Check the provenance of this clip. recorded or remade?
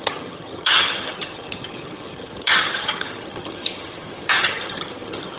remade